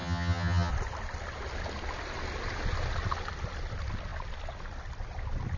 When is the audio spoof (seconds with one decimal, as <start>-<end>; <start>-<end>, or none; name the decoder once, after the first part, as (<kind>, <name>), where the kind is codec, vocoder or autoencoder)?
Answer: 0.0-0.7 (vocoder, HiFi-GAN)